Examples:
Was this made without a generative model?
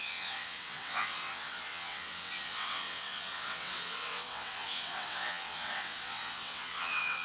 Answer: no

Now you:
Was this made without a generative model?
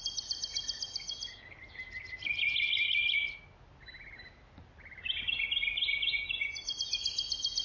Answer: yes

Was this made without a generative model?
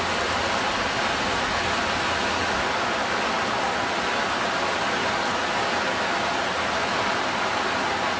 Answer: yes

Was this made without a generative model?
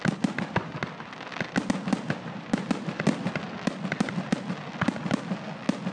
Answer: yes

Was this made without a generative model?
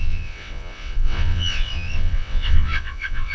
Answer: no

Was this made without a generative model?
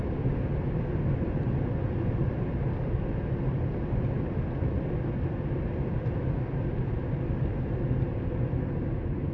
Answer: yes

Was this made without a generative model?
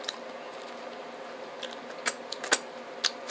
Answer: yes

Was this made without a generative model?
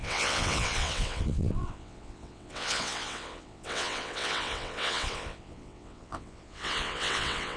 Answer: no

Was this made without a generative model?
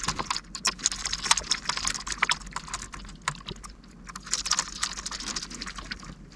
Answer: yes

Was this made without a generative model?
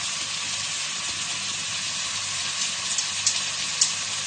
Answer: yes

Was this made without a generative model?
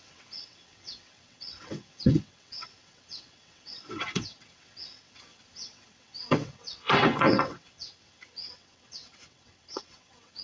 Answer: no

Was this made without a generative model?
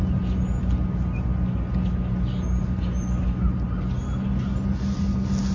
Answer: yes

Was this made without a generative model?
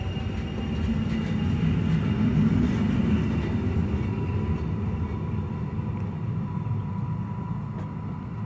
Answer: yes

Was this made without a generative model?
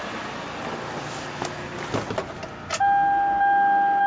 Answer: yes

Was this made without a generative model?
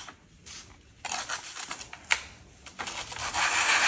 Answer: yes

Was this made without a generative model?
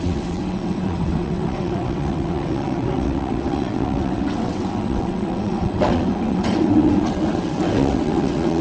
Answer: no